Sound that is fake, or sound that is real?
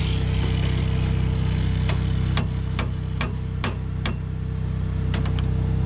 real